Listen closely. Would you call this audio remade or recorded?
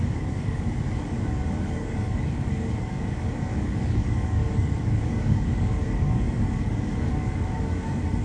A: remade